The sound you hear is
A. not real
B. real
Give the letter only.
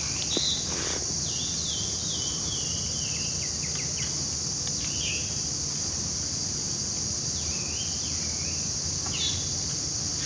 B